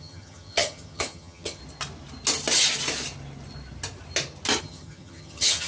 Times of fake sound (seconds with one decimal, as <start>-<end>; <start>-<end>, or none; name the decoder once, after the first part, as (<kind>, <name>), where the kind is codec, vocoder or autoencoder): 0.0-1.6 (vocoder, HiFi-GAN); 4.6-5.7